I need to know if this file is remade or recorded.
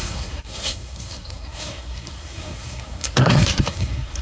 remade